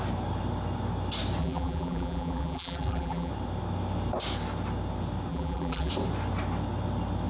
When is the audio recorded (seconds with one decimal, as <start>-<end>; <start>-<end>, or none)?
0.0-1.4; 3.3-5.3; 5.9-7.3